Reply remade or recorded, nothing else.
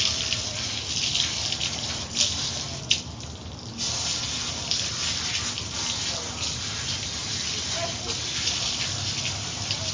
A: recorded